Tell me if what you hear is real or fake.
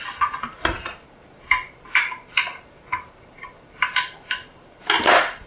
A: fake